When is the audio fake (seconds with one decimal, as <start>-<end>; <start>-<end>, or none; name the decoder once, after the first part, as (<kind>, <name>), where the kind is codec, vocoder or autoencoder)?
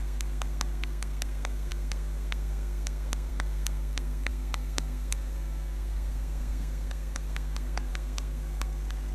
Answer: 0.0-9.1 (codec, SNAC)